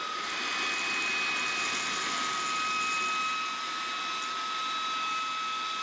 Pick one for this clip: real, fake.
real